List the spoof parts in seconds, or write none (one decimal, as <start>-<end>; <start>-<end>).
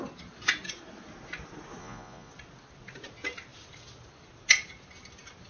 1.8-2.3